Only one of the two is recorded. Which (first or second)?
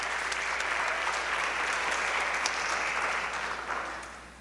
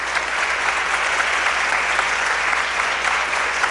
first